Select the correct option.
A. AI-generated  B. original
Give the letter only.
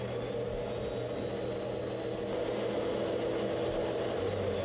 B